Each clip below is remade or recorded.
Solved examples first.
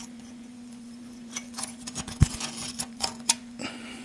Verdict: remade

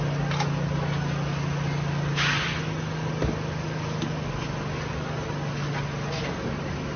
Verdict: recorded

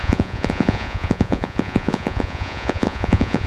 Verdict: remade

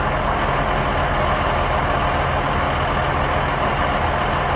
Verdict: recorded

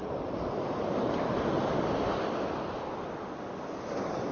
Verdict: recorded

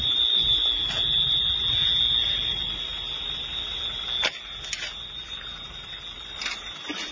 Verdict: recorded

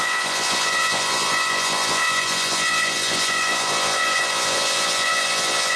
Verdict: remade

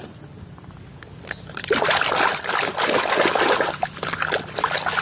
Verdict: recorded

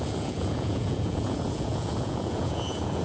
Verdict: remade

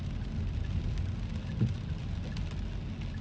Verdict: recorded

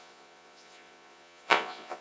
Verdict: remade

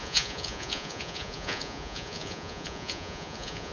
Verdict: remade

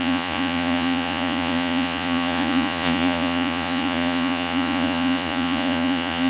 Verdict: remade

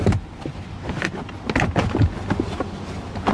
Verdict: recorded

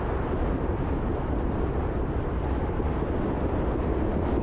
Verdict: recorded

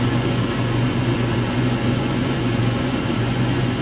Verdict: remade